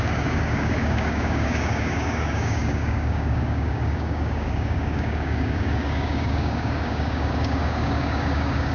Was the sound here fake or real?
fake